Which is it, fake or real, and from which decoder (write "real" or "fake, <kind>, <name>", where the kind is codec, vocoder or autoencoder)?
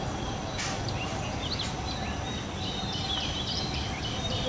fake, vocoder, BigVGAN v2